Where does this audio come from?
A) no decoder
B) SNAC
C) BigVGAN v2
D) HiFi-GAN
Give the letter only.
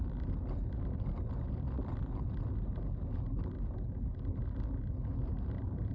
A